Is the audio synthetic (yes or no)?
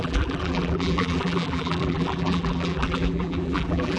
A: yes